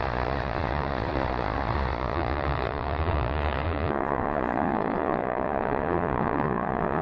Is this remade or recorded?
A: remade